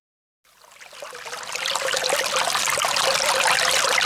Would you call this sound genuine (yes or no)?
yes